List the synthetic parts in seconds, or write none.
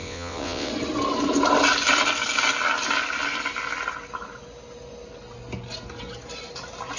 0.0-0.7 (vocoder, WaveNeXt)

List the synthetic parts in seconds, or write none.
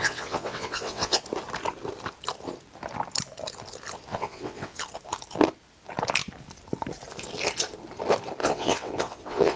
0.0-1.2 (vocoder, WaveNeXt); 4.1-4.8; 8.4-9.6